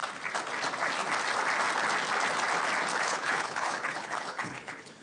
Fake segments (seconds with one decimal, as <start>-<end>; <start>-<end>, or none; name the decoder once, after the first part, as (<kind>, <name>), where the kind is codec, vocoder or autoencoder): 3.0-5.0 (codec, HILCodec)